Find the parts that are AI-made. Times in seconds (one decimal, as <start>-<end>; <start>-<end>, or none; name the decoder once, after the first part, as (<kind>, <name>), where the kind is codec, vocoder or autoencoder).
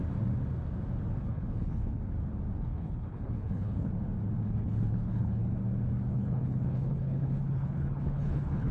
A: 1.2-2.0 (codec, HILCodec); 2.6-3.9; 4.4-5.4; 6.1-8.7